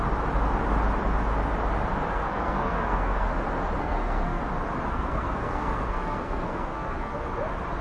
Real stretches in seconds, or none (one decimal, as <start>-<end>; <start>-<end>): 0.0-2.1; 3.3-3.8; 4.4-4.9; 7.2-7.8

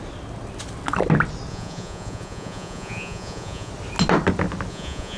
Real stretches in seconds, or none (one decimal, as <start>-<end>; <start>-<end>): 0.0-1.5; 3.7-4.7

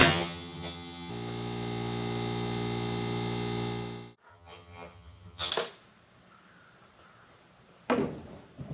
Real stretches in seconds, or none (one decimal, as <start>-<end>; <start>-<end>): 1.1-4.3; 5.5-8.7

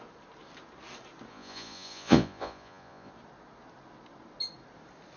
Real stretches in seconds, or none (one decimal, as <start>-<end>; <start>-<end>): 0.0-1.3; 3.1-5.2

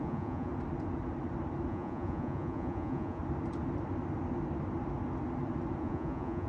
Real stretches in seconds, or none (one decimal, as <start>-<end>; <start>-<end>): 0.5-1.7; 3.2-5.8

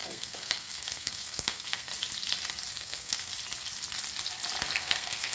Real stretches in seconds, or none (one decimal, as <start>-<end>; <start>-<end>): 1.9-2.7; 3.3-4.7

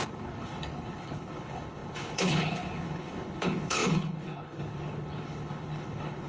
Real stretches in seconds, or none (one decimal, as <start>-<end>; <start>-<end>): none